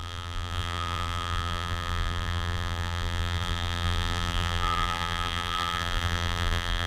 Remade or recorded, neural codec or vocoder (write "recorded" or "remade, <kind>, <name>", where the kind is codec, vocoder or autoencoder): remade, vocoder, BigVGAN v2